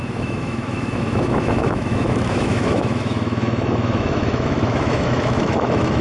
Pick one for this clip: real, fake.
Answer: fake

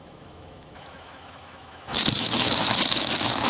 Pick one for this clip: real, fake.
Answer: fake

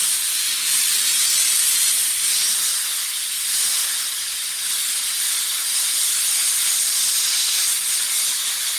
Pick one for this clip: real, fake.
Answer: real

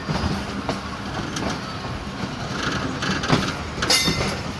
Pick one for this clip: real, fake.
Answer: real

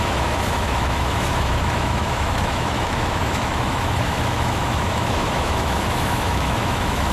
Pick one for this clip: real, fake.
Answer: fake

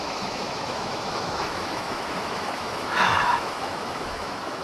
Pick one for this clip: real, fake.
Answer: fake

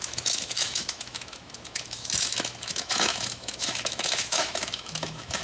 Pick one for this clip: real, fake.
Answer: fake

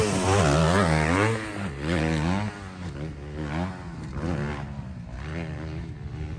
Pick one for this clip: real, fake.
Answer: real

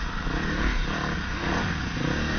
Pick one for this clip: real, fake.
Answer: real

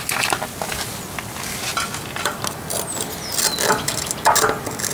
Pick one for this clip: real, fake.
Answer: real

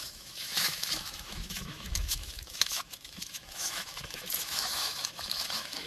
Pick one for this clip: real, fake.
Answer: fake